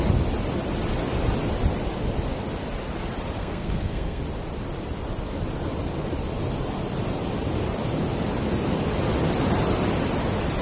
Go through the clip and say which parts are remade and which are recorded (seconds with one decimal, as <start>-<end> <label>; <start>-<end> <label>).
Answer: 0.0-3.4 recorded; 3.4-4.2 remade; 4.2-10.6 recorded